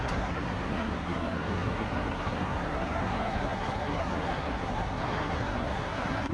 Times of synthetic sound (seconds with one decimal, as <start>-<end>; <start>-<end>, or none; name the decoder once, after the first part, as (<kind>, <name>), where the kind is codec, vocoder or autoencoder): 0.0-6.3 (codec, SNAC)